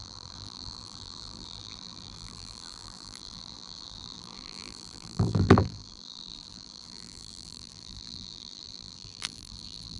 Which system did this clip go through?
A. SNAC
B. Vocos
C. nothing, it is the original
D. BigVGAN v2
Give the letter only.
D